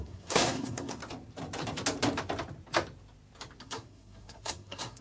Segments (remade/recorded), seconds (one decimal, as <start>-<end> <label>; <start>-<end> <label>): 0.0-1.0 remade; 1.0-3.6 recorded; 3.6-5.0 remade